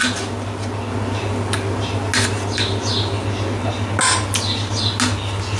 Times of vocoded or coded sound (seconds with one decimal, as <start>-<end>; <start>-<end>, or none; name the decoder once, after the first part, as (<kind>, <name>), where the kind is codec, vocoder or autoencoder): none